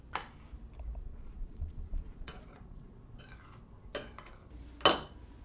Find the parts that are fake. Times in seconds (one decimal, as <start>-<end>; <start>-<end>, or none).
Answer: 1.0-3.2